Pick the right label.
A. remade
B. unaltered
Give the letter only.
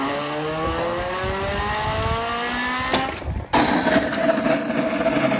B